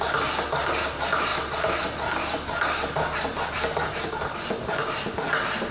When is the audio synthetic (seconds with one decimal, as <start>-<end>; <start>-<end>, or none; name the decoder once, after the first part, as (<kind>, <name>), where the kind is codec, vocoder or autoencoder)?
none